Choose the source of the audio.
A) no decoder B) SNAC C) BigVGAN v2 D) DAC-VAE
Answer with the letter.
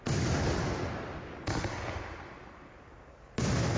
A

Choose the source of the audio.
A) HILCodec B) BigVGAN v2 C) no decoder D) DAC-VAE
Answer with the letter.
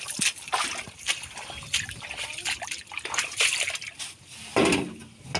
C